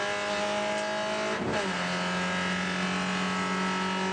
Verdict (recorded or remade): recorded